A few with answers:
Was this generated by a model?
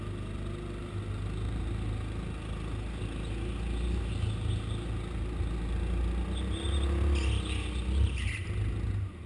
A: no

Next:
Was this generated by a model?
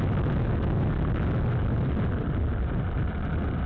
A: no